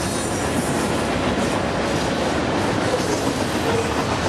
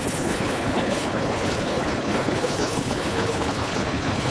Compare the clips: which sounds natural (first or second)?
first